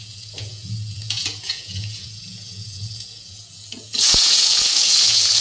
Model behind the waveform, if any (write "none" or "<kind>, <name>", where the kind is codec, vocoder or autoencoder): vocoder, Vocos